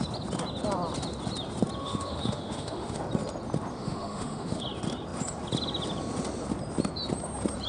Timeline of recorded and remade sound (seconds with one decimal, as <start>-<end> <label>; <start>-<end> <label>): 0.0-1.8 recorded; 1.8-3.0 remade; 3.0-3.7 recorded; 3.7-4.6 remade; 4.6-7.7 recorded